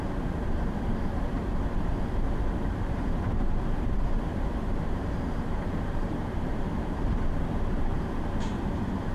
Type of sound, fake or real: fake